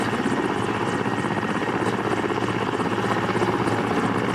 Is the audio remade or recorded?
recorded